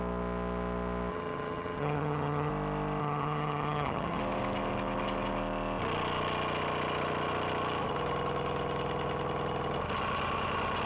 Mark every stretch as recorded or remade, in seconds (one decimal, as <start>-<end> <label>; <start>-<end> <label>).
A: 0.0-1.1 recorded; 1.1-2.5 remade; 2.5-3.0 recorded; 3.0-4.2 remade; 4.2-10.9 recorded